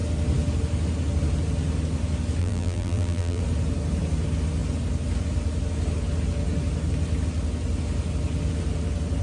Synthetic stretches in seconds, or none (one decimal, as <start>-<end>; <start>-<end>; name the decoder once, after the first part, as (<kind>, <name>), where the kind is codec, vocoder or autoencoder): 2.4-3.4 (vocoder, BigVGAN v2)